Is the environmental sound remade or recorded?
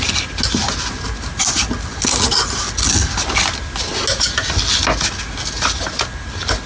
recorded